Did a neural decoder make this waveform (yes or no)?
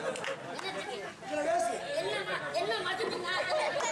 no